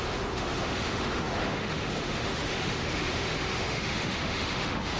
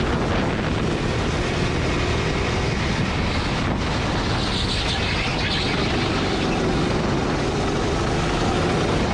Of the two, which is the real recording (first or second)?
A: second